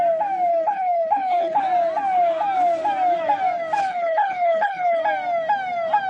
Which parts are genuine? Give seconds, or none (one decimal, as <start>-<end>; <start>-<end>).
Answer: 0.0-0.5; 1.6-3.8; 5.0-6.1